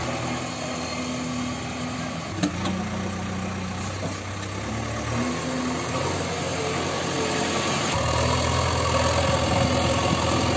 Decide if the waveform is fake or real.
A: real